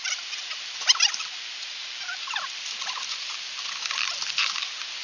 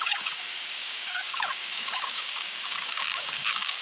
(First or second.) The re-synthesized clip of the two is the second